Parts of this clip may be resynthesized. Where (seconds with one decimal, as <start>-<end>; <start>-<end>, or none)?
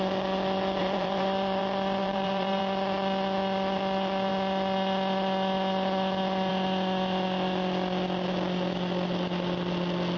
0.8-1.6; 2.0-2.6